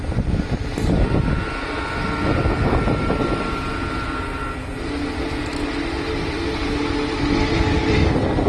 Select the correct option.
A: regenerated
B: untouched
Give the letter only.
B